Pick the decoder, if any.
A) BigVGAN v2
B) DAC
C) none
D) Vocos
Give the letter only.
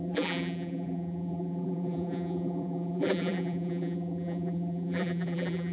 A